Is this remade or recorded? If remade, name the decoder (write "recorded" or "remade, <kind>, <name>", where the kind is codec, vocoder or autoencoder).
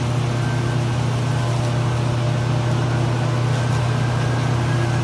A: recorded